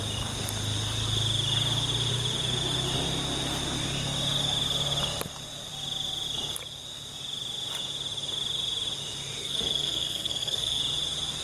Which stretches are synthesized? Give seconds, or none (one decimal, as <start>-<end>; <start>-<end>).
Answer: 9.4-10.8